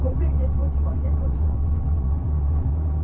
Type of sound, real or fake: fake